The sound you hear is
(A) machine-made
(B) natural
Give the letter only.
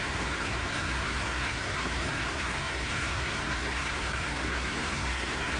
A